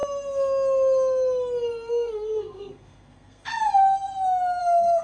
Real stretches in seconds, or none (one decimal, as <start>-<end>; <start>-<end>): 0.0-1.9; 3.7-4.6